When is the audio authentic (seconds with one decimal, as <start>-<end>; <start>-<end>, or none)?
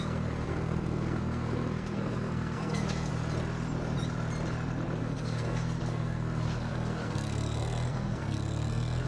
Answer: 3.1-5.0